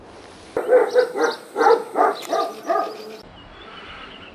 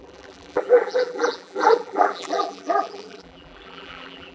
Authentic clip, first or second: first